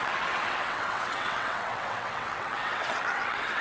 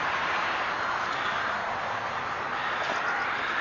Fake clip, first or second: first